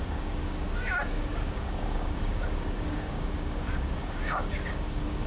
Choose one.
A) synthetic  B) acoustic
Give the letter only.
A